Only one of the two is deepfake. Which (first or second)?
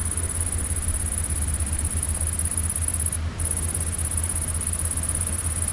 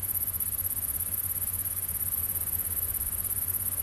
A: second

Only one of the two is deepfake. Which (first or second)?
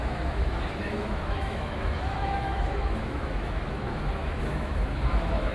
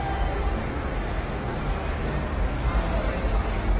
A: first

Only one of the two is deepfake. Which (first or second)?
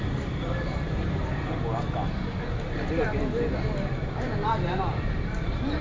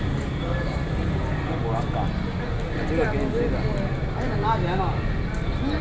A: first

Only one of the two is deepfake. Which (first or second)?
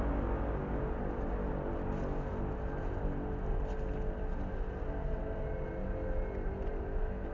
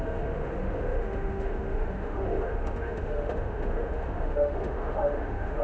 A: second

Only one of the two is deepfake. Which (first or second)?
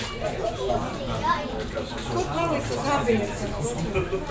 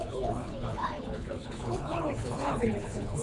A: second